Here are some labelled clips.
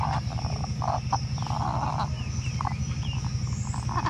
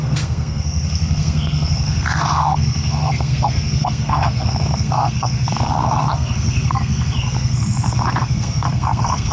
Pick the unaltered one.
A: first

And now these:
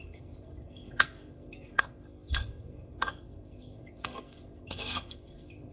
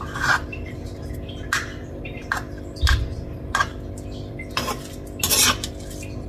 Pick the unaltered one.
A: second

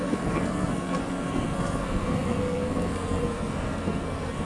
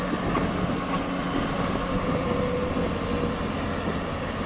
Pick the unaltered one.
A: second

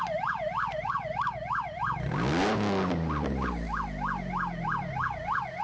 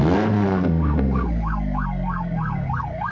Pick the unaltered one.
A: first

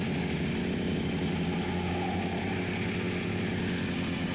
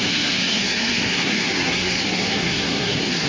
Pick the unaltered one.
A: first